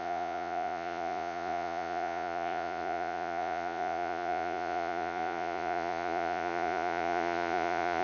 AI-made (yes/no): yes